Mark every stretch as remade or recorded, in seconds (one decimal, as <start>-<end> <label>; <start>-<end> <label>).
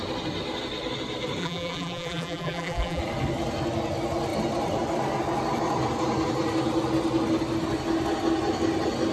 0.0-1.4 recorded; 1.4-3.0 remade; 3.0-9.1 recorded